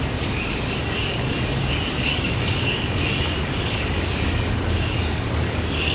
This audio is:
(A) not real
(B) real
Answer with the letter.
A